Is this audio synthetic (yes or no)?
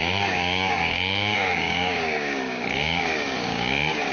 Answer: yes